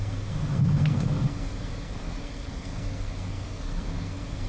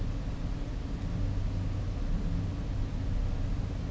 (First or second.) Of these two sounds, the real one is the second